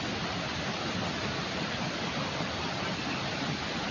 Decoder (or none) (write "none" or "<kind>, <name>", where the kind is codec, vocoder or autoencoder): none